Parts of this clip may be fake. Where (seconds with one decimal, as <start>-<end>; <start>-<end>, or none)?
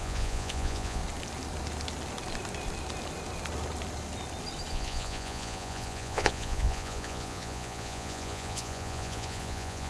0.0-1.0; 4.7-9.9